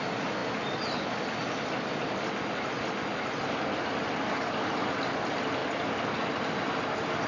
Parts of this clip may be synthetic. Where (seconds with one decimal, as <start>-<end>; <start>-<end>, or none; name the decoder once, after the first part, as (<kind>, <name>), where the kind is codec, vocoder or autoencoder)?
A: none